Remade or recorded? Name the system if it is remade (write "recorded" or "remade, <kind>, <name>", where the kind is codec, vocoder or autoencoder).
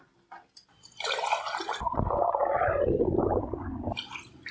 recorded